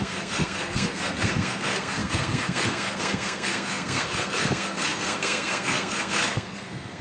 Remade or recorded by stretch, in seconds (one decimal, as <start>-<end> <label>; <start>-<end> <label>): 0.0-7.0 remade